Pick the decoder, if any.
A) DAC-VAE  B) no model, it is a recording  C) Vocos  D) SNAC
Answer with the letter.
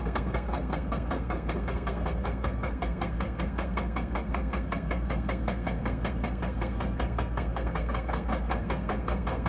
D